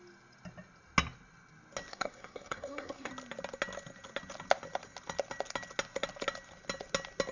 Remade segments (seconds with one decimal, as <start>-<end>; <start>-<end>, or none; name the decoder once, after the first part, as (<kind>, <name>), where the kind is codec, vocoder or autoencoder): 1.9-3.1 (codec, SNAC)